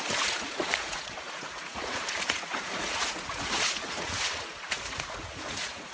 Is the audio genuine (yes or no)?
no